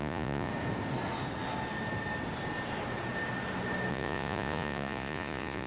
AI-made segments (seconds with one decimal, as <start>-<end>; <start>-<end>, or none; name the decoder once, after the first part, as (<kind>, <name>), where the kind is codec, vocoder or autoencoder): 0.0-0.5 (vocoder, Vocos); 3.9-5.7